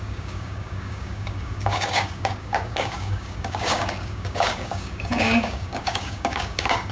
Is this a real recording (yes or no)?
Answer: no